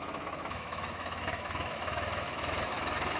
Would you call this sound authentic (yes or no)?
no